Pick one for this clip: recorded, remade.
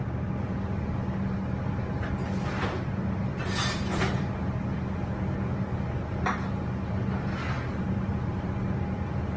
recorded